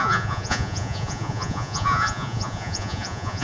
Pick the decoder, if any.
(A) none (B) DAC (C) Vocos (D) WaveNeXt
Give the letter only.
C